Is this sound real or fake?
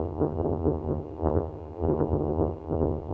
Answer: fake